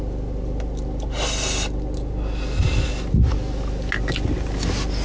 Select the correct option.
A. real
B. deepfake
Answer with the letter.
A